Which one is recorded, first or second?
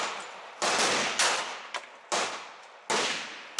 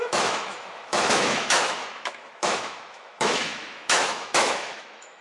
first